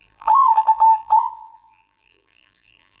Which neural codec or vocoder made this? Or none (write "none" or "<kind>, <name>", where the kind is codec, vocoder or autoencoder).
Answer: vocoder, BigVGAN v2